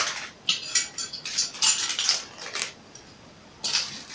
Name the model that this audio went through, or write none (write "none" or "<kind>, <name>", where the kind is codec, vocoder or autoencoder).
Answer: none